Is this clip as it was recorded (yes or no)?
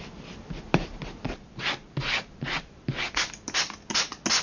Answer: yes